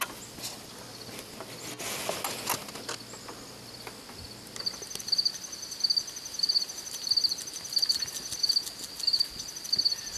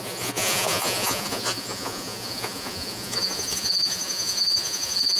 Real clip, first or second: first